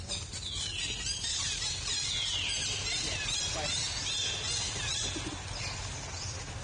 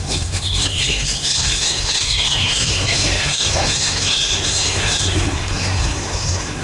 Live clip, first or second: first